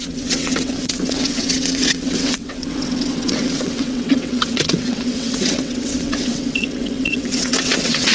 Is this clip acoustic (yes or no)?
no